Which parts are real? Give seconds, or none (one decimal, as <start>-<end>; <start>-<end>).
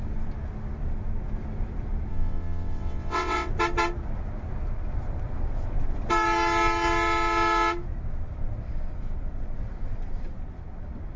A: 0.0-2.1; 3.5-11.2